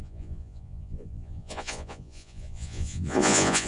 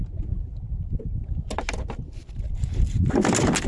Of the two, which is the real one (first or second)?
second